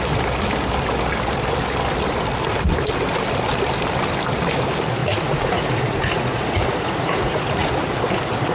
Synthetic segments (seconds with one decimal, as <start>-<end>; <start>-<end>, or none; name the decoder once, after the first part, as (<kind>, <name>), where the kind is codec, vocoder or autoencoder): 5.0-7.7 (vocoder, Vocos)

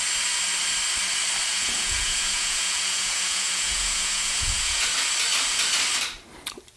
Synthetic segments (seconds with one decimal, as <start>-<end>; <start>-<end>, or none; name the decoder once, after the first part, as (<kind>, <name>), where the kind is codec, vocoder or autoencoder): 1.5-4.9 (vocoder, Vocos)